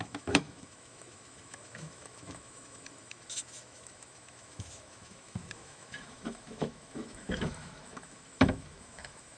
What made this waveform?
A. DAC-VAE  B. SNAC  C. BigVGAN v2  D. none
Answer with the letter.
A